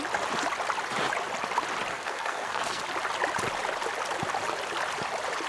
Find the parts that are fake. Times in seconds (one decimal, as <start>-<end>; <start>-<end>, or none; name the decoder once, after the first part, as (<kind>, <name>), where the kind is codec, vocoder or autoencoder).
1.9-2.8 (codec, SNAC)